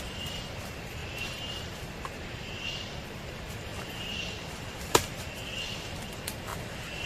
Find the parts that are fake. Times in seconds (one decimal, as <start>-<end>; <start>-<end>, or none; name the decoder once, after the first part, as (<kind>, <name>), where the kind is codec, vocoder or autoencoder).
0.0-6.5 (vocoder, BigVGAN v2)